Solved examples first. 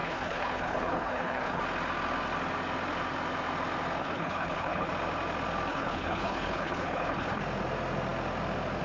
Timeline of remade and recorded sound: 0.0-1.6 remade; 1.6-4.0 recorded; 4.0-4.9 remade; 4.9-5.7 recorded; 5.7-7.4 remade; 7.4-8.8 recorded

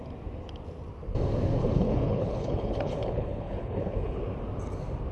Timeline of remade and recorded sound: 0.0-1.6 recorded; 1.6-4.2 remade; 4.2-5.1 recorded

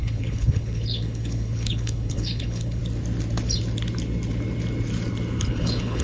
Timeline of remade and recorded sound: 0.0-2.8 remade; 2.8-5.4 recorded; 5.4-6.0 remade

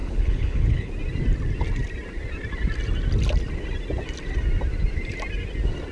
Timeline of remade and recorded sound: 0.0-0.9 remade; 0.9-5.9 recorded

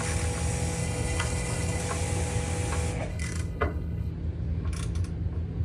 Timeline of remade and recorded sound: 0.0-0.8 recorded; 0.8-1.8 remade; 1.8-3.1 recorded; 3.1-4.1 remade; 4.1-5.6 recorded

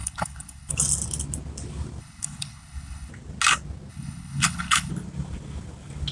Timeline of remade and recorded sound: 0.0-0.7 remade; 0.7-2.0 recorded; 2.0-3.1 remade; 3.1-3.9 recorded; 3.9-4.9 remade; 4.9-6.1 recorded

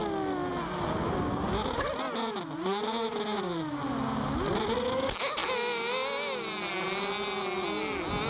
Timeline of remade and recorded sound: 0.0-8.3 recorded